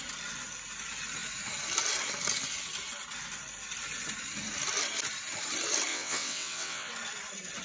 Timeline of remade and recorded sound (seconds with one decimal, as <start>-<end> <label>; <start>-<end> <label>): 0.0-5.9 recorded; 5.9-6.9 remade; 6.9-7.6 recorded